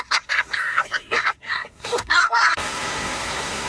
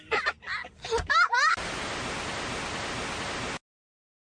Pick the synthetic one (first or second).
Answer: first